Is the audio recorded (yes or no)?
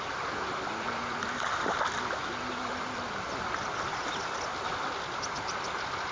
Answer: yes